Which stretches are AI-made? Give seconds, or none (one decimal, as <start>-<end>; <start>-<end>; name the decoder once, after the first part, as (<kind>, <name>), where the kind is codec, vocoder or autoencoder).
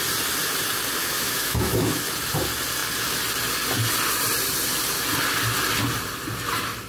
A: 1.0-2.0 (autoencoder, DAC-VAE)